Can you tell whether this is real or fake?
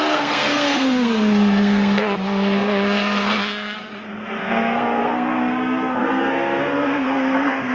fake